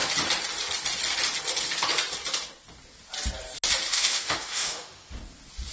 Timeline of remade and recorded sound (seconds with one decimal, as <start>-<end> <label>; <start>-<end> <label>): 0.0-3.9 recorded; 3.9-5.1 remade; 5.1-5.7 recorded